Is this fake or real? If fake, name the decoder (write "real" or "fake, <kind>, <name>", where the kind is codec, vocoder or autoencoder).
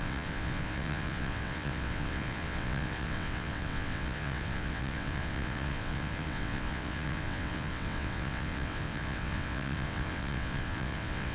fake, vocoder, WaveNeXt